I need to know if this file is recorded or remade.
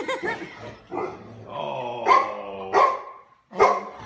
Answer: recorded